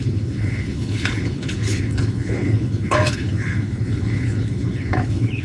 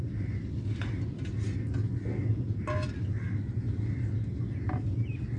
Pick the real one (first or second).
second